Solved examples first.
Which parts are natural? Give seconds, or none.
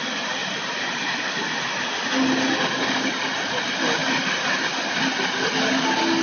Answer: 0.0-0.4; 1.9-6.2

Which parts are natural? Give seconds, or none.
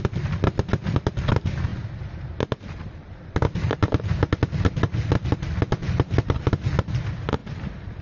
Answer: 0.0-8.0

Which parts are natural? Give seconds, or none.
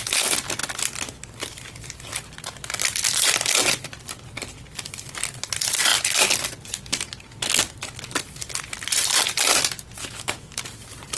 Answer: 0.0-10.0; 10.6-11.2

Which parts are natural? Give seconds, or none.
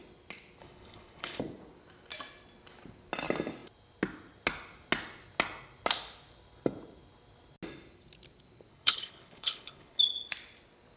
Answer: 0.0-0.6; 1.4-8.7; 10.0-11.0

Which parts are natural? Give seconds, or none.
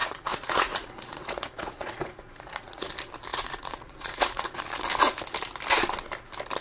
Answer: 2.9-3.3; 4.6-6.6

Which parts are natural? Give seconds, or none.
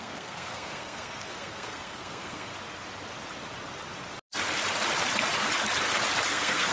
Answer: 2.5-6.3